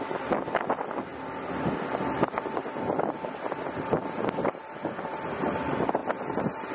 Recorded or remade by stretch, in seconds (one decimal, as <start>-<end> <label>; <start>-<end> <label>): 0.0-6.7 recorded